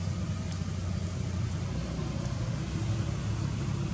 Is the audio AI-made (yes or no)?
no